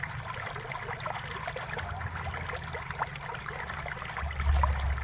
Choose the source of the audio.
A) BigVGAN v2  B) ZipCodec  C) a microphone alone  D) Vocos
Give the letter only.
C